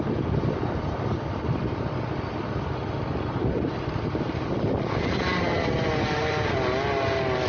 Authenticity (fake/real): real